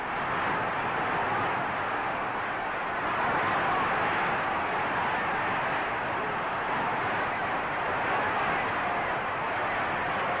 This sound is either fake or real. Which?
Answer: real